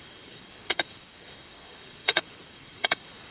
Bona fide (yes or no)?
no